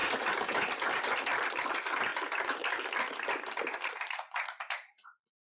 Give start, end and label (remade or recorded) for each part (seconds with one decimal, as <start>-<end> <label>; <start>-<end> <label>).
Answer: 0.0-1.0 remade; 1.0-5.4 recorded

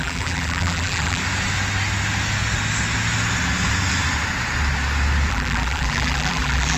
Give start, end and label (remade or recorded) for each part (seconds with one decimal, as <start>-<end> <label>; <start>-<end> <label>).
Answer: 0.0-1.2 remade; 1.2-5.3 recorded; 5.3-6.8 remade